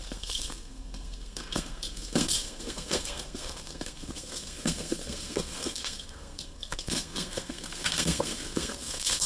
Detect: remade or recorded remade